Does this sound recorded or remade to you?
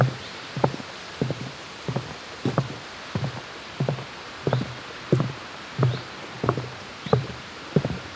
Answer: remade